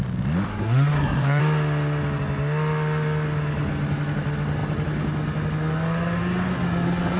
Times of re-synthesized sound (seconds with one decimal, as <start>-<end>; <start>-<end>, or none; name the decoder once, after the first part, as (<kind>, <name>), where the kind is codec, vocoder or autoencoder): 0.5-1.4 (codec, SNAC)